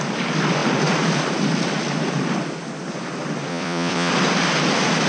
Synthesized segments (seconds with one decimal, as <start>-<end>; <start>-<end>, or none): 3.5-4.1